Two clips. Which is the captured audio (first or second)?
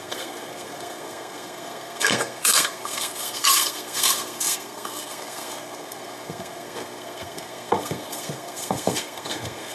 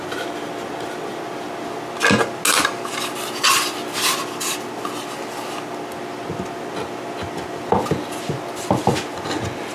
second